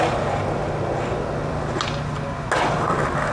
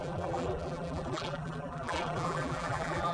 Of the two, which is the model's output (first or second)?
second